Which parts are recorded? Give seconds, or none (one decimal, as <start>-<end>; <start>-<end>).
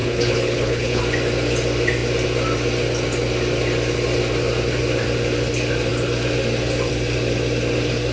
1.0-8.1